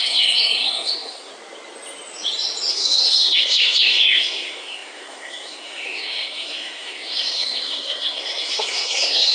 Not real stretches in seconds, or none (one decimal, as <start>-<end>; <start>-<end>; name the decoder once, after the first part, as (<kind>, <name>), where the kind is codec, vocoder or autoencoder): 0.0-1.3 (codec, SNAC); 2.7-9.3